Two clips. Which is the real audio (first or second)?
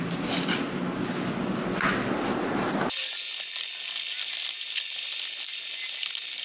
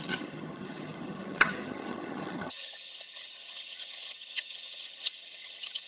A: first